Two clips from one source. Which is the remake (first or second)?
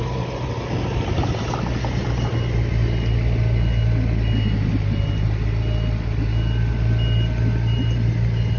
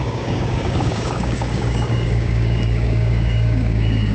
second